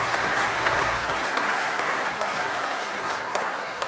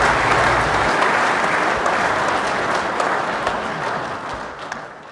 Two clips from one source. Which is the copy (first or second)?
first